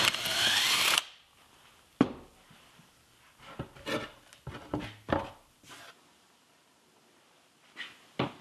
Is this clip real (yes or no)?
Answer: yes